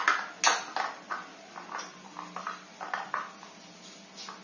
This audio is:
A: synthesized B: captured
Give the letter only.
B